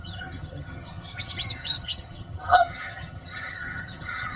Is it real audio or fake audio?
fake